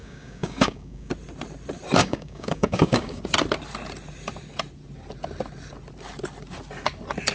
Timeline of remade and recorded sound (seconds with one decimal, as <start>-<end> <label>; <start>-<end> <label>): 0.0-1.1 remade; 1.1-2.0 recorded; 2.0-3.2 remade; 3.2-7.3 recorded